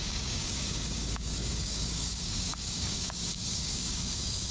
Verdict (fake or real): fake